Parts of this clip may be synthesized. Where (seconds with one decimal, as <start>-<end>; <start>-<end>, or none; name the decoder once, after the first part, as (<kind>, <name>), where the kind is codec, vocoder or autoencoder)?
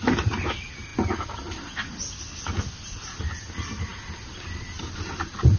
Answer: none